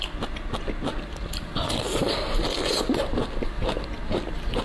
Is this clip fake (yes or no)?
no